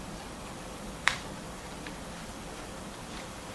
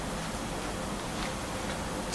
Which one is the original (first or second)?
second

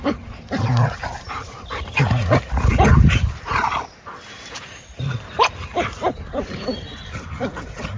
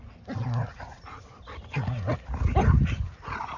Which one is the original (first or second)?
second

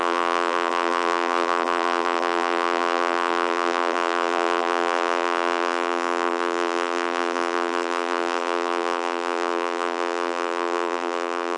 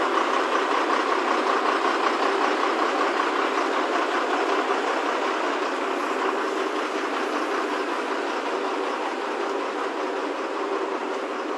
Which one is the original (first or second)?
second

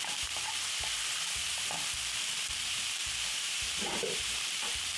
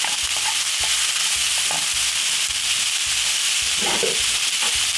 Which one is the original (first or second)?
second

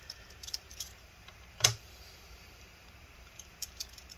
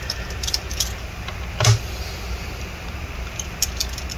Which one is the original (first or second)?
second